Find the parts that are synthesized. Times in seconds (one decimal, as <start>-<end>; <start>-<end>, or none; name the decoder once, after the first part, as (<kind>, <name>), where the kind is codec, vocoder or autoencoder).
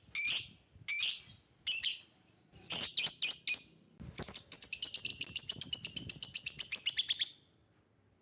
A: 1.9-2.9 (vocoder, Vocos)